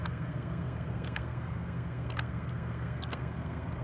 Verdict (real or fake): fake